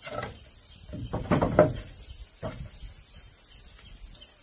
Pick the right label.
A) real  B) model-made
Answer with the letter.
A